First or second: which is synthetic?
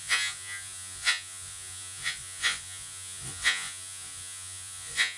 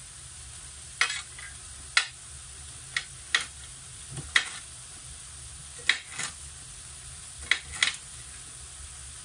first